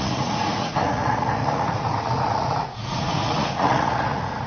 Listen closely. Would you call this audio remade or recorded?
remade